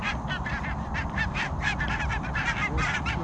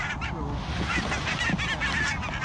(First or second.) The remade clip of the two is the first